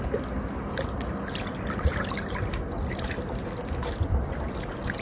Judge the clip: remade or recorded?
recorded